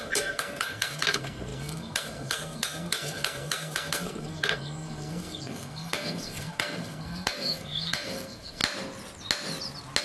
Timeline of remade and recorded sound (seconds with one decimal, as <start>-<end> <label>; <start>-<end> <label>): 0.0-8.6 remade; 8.6-10.0 recorded